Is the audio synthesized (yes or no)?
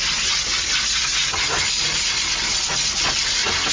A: no